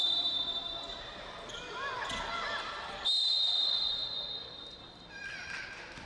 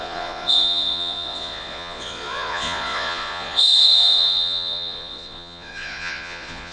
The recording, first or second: first